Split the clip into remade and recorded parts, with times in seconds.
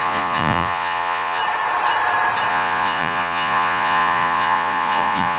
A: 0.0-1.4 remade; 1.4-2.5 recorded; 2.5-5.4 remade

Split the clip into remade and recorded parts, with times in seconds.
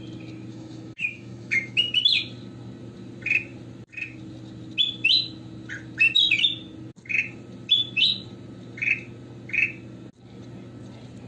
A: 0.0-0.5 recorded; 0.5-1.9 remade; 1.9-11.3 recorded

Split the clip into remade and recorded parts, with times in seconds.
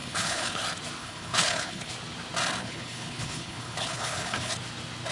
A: 0.0-0.6 remade; 0.6-1.0 recorded; 1.0-1.9 remade; 1.9-2.6 recorded; 2.6-4.5 remade; 4.5-5.1 recorded